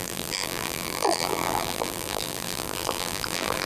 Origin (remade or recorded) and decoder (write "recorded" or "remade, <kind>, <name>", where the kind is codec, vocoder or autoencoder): remade, vocoder, BigVGAN v2